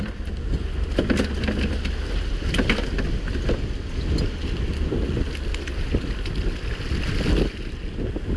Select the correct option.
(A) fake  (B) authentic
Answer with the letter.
B